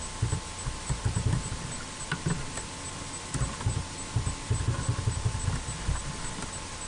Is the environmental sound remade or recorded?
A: recorded